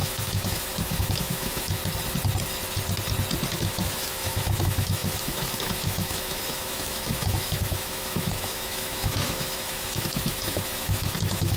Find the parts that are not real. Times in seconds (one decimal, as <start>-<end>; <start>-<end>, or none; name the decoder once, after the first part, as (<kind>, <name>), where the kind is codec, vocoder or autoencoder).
0.0-1.8 (autoencoder, DAC-VAE); 3.5-11.6